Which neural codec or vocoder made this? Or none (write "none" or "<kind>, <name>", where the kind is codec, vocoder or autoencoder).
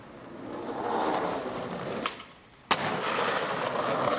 none